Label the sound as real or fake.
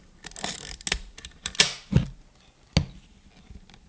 real